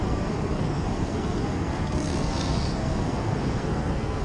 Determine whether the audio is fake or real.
fake